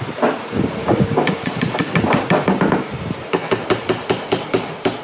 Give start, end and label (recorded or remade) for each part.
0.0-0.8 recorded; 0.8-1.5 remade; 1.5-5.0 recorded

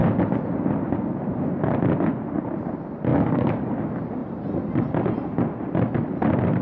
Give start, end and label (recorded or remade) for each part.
0.0-3.1 recorded; 3.1-3.7 remade; 3.7-6.6 recorded

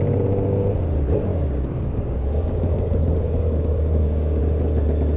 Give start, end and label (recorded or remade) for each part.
0.0-1.3 recorded; 1.3-4.4 remade; 4.4-5.2 recorded

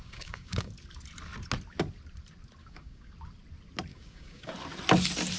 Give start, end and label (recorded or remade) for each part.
0.0-0.7 remade; 0.7-2.6 recorded; 2.6-3.1 remade; 3.1-3.9 recorded; 3.9-4.5 remade; 4.5-5.4 recorded

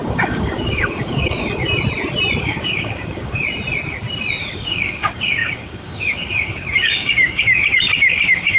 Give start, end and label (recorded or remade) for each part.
0.0-1.6 remade; 1.6-2.4 recorded; 2.4-3.4 remade; 3.4-4.4 recorded; 4.4-8.6 remade

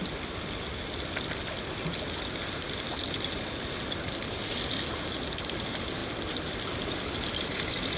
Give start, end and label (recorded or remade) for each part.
0.0-8.0 recorded

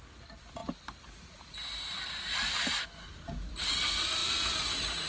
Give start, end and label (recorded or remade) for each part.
0.0-5.1 recorded